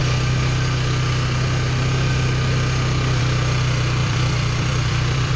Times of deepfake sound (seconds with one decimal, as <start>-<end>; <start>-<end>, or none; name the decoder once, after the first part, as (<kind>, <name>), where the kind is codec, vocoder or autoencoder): 4.0-5.4 (vocoder, BigVGAN v2)